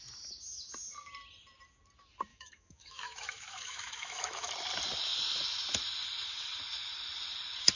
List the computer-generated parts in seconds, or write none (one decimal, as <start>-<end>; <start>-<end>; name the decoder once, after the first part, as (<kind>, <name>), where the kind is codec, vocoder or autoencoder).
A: 2.3-4.5 (autoencoder, DAC-VAE)